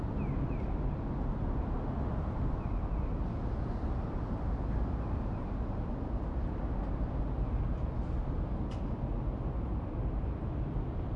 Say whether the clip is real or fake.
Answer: real